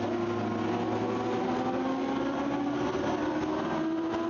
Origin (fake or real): real